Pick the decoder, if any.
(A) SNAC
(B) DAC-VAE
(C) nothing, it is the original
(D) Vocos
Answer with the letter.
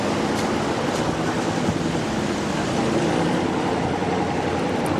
C